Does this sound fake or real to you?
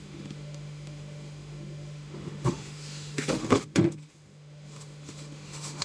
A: fake